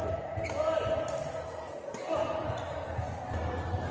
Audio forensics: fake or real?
real